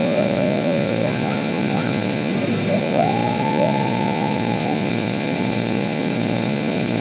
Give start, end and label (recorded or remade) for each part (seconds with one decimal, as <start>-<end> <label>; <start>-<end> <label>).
0.0-2.3 remade; 2.3-2.8 recorded; 2.8-7.0 remade